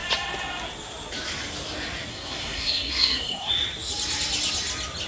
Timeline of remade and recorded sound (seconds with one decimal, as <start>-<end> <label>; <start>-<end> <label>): 0.0-2.1 recorded; 2.1-3.5 remade; 3.5-5.1 recorded